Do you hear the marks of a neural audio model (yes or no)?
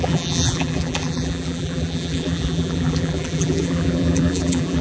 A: yes